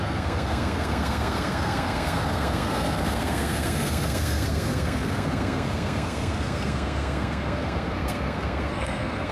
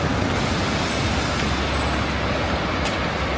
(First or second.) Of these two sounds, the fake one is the first